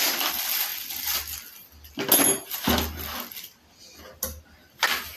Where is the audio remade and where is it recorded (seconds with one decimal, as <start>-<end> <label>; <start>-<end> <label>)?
0.0-5.2 recorded